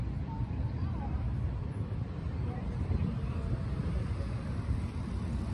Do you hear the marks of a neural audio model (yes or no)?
no